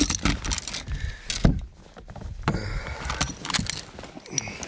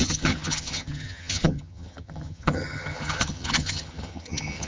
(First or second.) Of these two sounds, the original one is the first